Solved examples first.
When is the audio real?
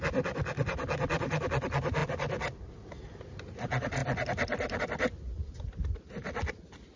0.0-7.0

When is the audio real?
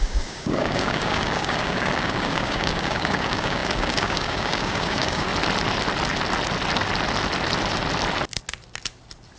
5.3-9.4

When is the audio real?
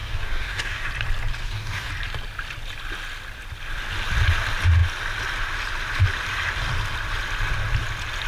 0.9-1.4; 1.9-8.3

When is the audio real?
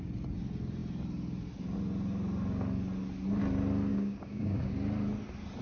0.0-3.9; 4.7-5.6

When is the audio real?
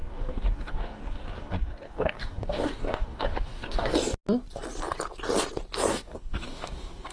3.9-5.9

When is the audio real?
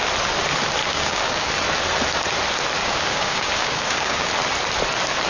0.0-0.8; 1.5-2.8; 4.3-5.3